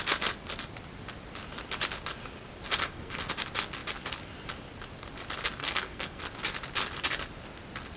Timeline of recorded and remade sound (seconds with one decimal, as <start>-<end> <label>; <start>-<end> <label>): 0.0-2.8 recorded; 2.8-3.3 remade; 3.3-5.6 recorded; 5.6-6.2 remade; 6.2-8.0 recorded

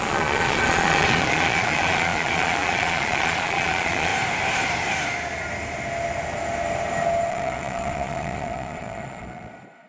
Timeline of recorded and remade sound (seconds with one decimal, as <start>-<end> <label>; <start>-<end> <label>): 0.0-4.1 remade; 4.1-7.3 recorded; 7.3-9.9 remade

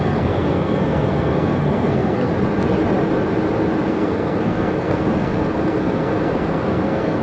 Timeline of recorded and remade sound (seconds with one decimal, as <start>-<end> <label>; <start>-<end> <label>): 0.0-2.3 remade; 2.3-3.9 recorded; 3.9-7.2 remade

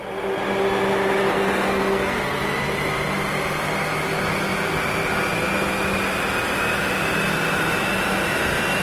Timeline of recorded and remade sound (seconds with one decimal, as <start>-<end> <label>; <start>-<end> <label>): 0.0-1.3 recorded; 1.3-2.4 remade; 2.4-8.8 recorded